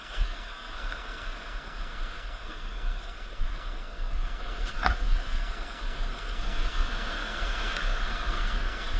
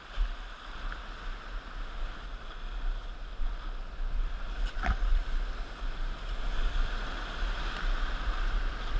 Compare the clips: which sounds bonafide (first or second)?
second